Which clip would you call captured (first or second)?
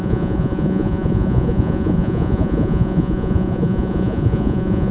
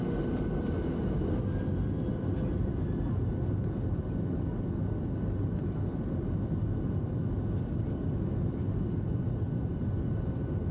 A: second